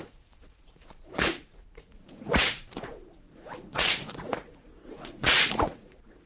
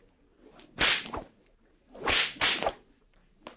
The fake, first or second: first